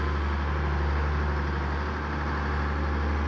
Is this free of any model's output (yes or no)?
yes